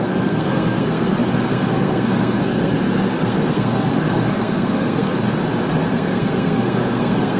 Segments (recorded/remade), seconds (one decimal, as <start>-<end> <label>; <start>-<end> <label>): 0.0-5.1 remade; 5.1-5.7 recorded; 5.7-7.4 remade